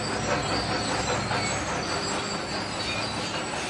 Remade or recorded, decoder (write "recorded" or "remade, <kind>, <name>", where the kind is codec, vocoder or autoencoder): recorded